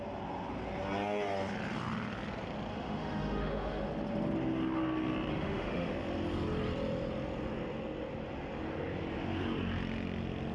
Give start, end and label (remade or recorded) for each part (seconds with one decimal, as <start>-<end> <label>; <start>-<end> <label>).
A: 0.0-2.7 recorded; 2.7-3.9 remade; 3.9-5.3 recorded; 5.3-5.9 remade; 5.9-10.5 recorded